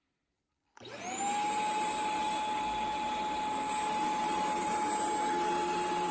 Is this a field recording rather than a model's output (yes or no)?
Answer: yes